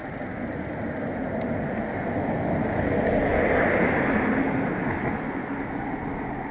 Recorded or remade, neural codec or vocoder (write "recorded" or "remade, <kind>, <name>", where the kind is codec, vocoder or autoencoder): recorded